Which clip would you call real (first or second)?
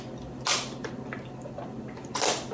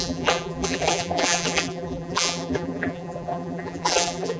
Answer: first